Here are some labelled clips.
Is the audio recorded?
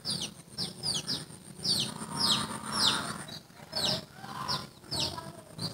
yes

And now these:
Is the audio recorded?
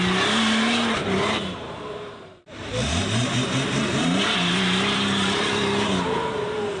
no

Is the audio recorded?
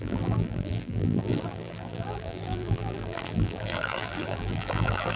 no